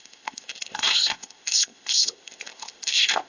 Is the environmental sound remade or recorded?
remade